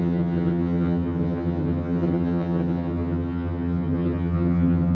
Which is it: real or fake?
fake